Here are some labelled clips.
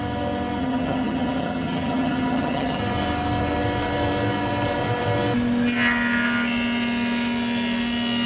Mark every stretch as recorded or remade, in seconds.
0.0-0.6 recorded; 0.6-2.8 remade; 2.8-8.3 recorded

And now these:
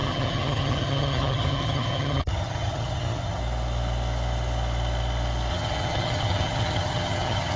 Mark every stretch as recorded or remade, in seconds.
0.0-3.4 remade; 3.4-5.5 recorded; 5.5-7.6 remade

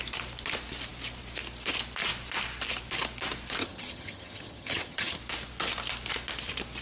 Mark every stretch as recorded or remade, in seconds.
0.0-3.6 recorded; 3.6-5.2 remade; 5.2-6.8 recorded

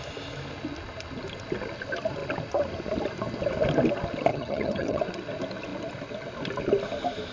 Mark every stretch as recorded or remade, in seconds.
0.0-4.3 recorded; 4.3-5.0 remade; 5.0-7.3 recorded